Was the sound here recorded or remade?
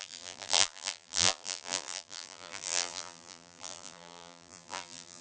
remade